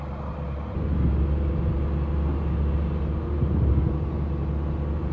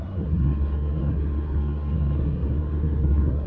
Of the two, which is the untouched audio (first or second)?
first